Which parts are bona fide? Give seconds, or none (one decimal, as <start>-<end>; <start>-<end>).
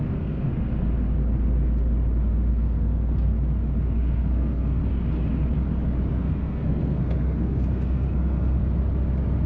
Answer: 0.5-2.5; 3.3-4.0; 4.8-6.1; 8.6-9.5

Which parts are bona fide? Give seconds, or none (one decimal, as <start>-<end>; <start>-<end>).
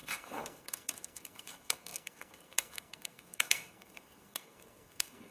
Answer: none